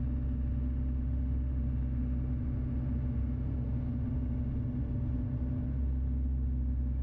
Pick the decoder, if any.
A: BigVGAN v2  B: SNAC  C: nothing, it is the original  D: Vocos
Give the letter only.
C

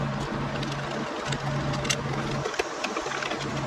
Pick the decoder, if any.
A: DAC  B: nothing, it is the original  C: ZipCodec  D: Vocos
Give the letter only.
B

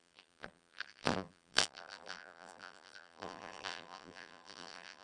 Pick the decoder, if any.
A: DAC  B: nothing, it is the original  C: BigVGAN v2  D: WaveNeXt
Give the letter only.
C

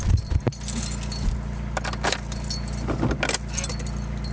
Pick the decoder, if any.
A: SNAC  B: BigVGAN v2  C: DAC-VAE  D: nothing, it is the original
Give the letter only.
D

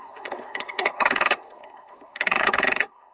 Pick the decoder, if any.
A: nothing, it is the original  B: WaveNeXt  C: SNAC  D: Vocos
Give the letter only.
C